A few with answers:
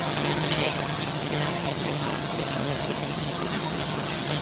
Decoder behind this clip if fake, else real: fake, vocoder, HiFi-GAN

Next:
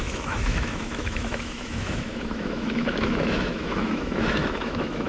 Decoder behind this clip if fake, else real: fake, autoencoder, DAC-VAE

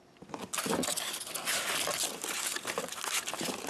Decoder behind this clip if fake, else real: real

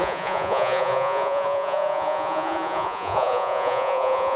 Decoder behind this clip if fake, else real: fake, vocoder, Vocos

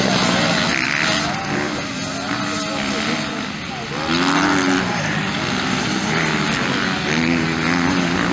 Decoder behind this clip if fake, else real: real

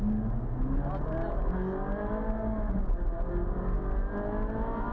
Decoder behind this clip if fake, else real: real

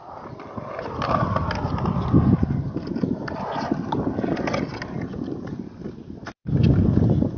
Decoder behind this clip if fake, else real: real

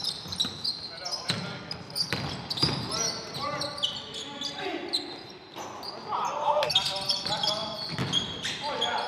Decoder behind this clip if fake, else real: real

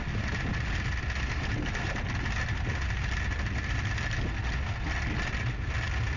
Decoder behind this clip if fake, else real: real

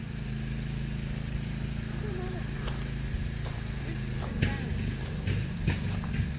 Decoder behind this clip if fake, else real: real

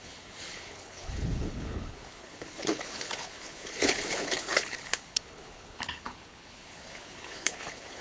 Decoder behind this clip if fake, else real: fake, codec, HILCodec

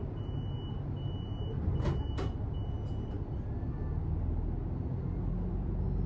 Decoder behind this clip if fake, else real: real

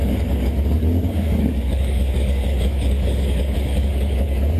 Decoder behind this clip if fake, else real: fake, codec, DAC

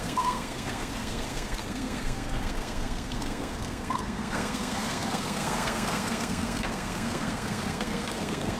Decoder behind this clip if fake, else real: fake, codec, SNAC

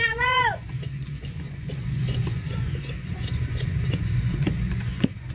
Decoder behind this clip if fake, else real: fake, vocoder, Vocos